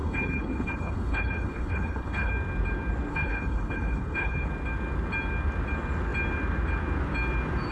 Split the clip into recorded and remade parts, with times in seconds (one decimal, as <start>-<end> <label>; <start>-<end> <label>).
0.0-2.3 remade; 2.3-3.1 recorded; 3.1-4.5 remade; 4.5-7.7 recorded